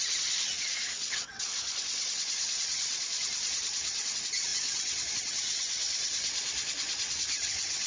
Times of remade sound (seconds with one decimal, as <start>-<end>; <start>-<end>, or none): 0.0-7.9